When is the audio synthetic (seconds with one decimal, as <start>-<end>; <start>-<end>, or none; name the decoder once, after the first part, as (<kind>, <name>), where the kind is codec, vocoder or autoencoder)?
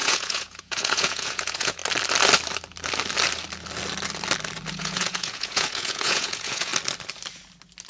0.0-1.8 (vocoder, Vocos); 4.7-6.7